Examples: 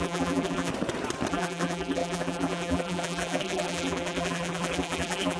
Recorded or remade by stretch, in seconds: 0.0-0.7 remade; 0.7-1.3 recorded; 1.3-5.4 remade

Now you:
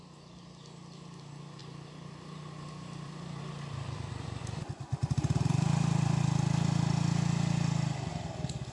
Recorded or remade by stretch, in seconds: 0.0-1.6 recorded; 1.6-3.4 remade; 3.4-5.0 recorded; 5.0-6.2 remade; 6.2-8.7 recorded

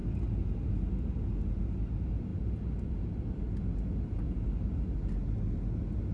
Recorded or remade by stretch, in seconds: 0.0-6.1 recorded

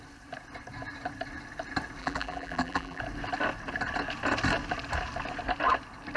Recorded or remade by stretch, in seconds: 0.0-2.0 recorded; 2.0-3.0 remade; 3.0-6.2 recorded

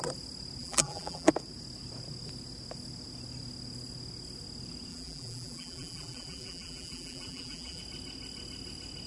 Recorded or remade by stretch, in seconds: 0.0-0.6 recorded; 0.6-1.3 remade; 1.3-4.9 recorded; 4.9-7.8 remade; 7.8-9.1 recorded

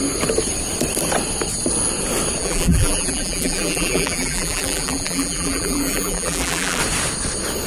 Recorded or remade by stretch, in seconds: 0.0-2.4 recorded; 2.4-6.8 remade; 6.8-7.7 recorded

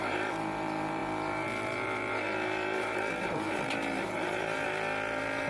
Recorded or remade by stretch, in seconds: 0.0-5.5 remade